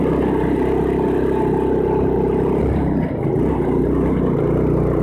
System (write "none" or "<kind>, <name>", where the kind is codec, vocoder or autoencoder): none